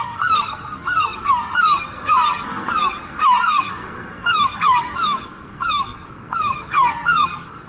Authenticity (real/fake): fake